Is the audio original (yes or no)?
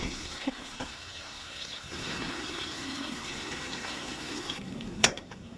no